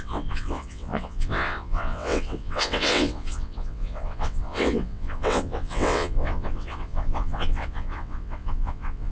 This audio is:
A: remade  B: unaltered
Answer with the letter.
A